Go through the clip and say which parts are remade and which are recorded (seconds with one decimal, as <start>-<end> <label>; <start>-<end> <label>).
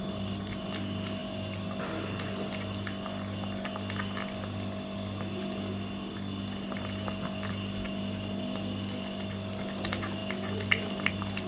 0.0-11.5 recorded